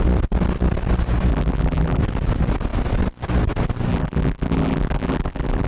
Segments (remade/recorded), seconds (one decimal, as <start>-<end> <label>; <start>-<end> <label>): 0.0-1.3 recorded; 1.3-2.0 remade; 2.0-3.9 recorded; 3.9-5.7 remade